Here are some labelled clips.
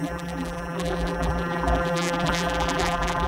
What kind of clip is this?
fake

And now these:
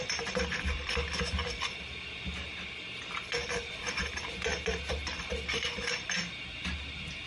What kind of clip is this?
fake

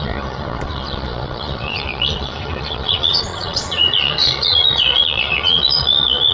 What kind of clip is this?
fake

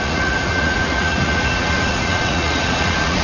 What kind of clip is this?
fake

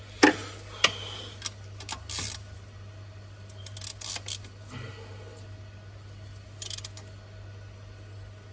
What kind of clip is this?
real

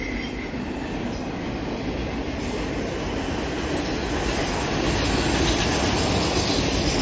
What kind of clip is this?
real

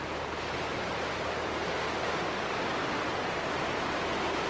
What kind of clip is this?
real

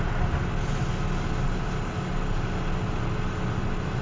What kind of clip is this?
real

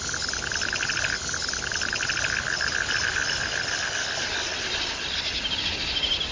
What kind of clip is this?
real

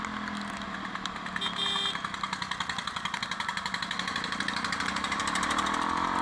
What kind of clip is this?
real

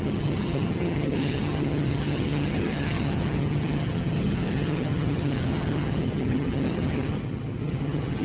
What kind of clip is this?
fake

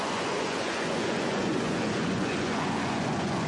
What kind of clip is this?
fake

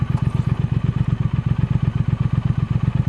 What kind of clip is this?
real